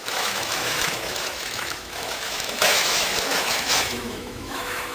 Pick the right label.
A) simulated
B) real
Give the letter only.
A